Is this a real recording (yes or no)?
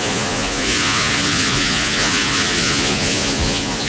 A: no